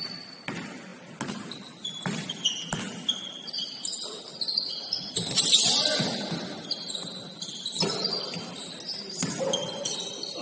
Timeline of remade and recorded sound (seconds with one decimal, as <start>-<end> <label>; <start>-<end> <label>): 0.0-10.4 recorded